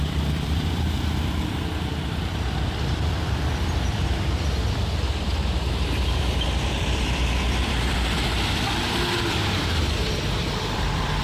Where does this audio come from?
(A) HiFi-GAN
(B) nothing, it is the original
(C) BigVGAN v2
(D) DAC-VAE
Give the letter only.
C